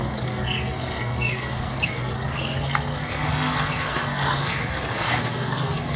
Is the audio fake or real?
fake